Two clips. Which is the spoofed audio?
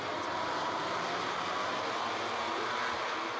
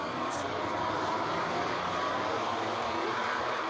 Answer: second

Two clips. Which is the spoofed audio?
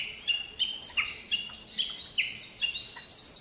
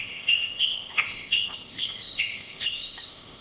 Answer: second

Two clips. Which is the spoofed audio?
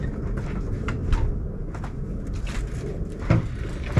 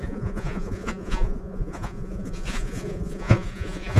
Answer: second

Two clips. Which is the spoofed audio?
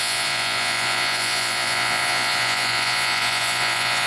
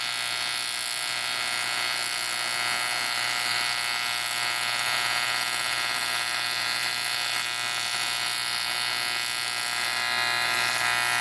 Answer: first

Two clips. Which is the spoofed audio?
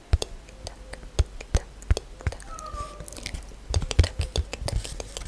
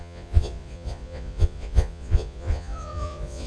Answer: second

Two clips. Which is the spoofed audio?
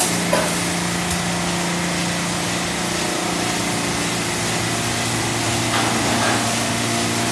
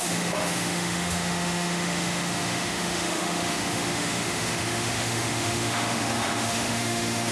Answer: second